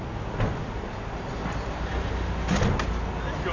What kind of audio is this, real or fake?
real